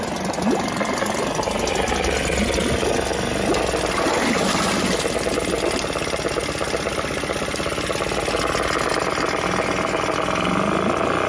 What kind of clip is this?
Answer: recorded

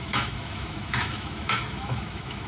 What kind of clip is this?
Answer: remade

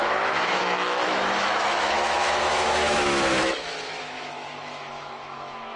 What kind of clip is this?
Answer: remade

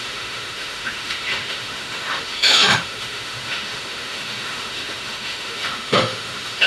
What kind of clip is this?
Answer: remade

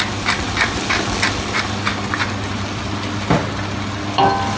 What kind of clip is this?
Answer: recorded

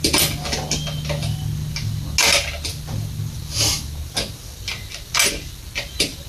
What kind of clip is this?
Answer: recorded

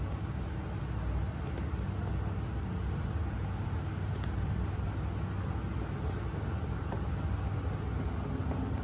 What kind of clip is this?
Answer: recorded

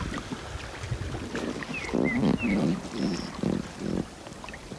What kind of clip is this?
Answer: recorded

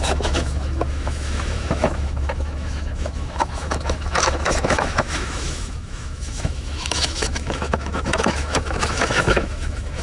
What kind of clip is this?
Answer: remade